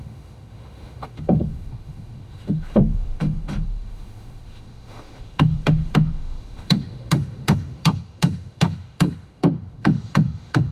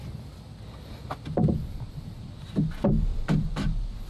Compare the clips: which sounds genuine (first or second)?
second